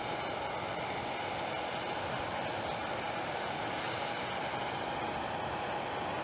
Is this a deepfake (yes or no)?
no